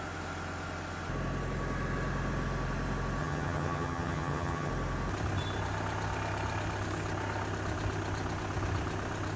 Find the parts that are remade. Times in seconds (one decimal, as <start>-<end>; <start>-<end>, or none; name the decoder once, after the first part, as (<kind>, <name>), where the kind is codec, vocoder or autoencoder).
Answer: 3.2-4.7 (vocoder, HiFi-GAN)